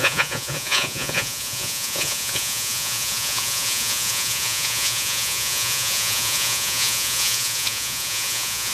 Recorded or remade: remade